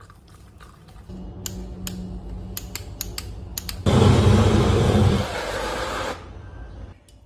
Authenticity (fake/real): real